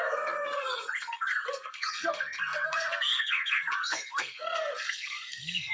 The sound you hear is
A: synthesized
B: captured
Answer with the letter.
A